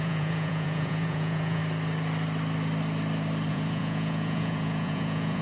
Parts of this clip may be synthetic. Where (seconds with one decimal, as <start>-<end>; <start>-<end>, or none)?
0.0-1.6; 3.5-5.4